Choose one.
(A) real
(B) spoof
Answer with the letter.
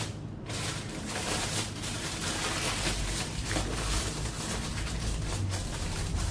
B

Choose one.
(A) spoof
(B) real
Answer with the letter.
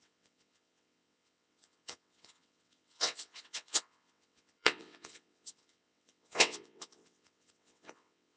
A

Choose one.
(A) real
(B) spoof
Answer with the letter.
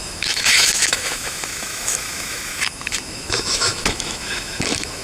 B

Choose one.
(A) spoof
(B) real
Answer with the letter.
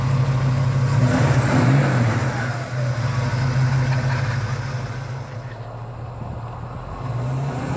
B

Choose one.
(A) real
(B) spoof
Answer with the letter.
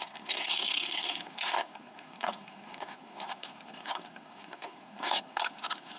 B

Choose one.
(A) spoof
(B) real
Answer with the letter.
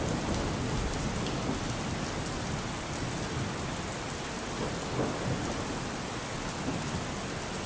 B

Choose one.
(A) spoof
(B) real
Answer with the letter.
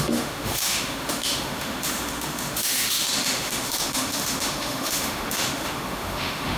A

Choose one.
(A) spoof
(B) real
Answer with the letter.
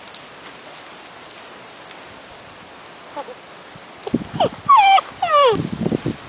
B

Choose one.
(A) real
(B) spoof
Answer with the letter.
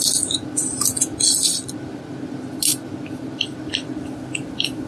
A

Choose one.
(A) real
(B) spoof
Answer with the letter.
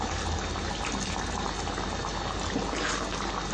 A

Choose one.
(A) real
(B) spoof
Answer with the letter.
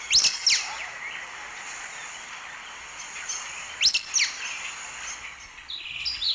A